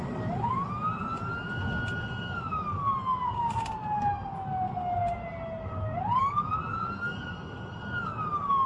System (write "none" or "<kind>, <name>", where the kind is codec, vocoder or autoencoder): none